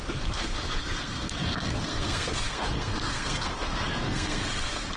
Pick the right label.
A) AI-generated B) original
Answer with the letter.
A